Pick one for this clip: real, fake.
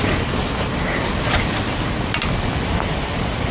real